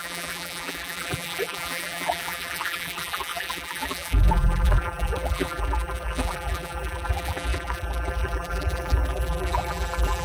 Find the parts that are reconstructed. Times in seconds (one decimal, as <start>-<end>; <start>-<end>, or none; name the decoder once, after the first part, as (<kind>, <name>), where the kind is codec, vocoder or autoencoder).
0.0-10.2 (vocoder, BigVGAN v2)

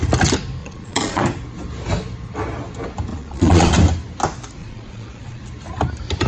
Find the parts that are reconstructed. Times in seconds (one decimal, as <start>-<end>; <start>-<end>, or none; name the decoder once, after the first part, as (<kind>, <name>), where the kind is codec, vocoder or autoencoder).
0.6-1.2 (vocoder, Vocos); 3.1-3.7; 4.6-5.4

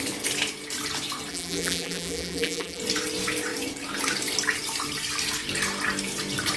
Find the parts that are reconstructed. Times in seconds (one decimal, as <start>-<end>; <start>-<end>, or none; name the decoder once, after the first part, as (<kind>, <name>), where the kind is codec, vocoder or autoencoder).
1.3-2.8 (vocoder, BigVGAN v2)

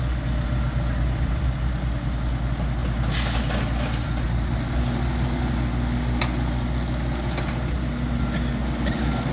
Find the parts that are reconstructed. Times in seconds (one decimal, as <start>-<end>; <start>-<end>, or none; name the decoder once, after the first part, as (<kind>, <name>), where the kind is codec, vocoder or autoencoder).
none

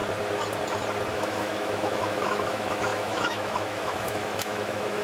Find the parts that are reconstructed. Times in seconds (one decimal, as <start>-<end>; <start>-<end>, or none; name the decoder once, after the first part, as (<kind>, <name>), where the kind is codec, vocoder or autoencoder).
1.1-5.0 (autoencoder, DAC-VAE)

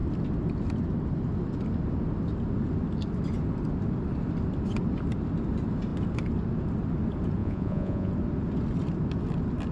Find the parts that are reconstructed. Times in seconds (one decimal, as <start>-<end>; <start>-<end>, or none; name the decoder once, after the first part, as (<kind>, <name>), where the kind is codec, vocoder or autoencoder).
7.4-8.1 (vocoder, Vocos)